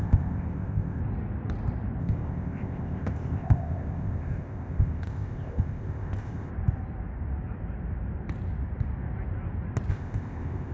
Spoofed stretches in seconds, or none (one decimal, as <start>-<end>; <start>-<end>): 0.0-1.0; 2.0-6.5; 9.9-10.7